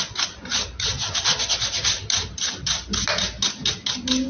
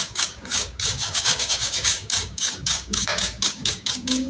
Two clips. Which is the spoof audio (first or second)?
second